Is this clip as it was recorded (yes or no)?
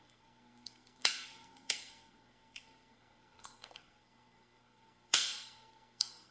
no